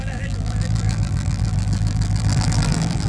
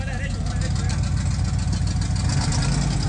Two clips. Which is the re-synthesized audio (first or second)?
first